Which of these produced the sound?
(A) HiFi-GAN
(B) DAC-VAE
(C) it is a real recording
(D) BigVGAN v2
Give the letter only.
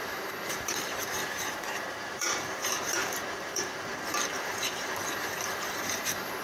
D